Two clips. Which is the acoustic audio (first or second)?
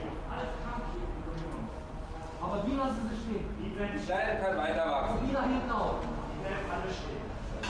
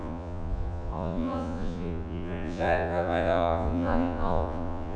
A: first